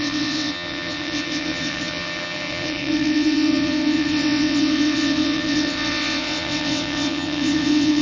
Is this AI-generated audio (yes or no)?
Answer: yes